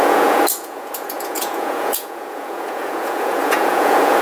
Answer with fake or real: fake